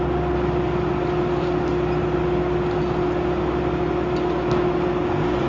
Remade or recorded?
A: recorded